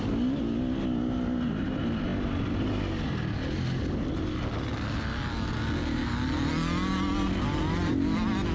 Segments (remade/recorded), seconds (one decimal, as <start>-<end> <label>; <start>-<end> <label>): 0.0-8.5 recorded